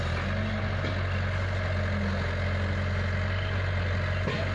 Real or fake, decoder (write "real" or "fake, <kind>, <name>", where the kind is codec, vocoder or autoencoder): real